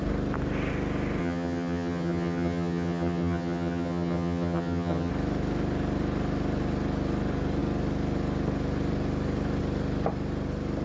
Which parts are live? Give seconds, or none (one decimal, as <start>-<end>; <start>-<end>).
0.0-1.2; 5.1-10.8